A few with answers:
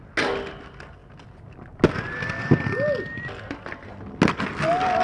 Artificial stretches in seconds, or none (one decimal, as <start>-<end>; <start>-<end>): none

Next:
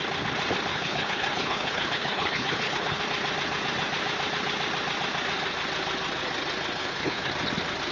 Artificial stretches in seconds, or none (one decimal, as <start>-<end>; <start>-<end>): 0.7-3.0; 6.8-7.3

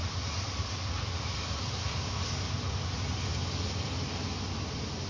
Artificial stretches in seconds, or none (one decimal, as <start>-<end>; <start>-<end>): none

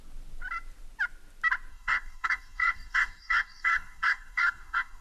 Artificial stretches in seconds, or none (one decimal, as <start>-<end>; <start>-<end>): 1.7-5.0

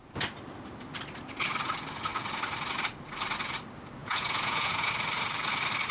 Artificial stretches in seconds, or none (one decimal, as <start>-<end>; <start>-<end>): 4.0-4.9

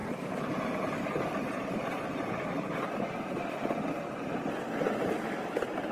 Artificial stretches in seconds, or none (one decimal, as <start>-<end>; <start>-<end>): 0.0-3.5

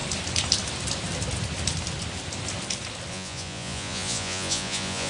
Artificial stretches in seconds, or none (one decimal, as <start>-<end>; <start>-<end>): 3.1-5.1

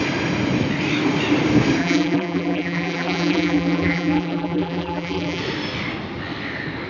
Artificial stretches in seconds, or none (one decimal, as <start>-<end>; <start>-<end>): 1.8-5.4